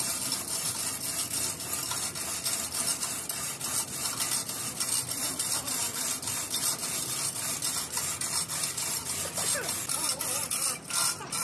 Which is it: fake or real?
real